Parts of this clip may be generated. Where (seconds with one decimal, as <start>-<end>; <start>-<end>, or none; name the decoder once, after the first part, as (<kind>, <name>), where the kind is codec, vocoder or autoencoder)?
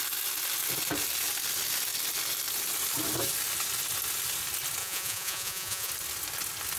4.8-5.9 (vocoder, Vocos)